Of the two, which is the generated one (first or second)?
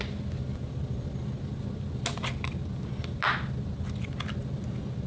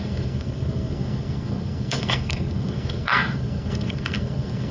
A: second